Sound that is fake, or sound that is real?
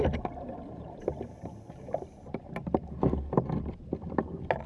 real